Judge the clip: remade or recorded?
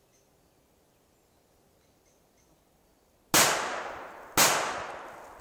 recorded